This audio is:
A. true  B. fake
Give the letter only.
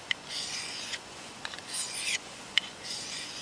B